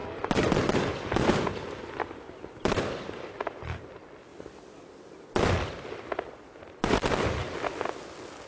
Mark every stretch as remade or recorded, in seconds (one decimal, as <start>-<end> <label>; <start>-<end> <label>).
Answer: 0.0-8.5 recorded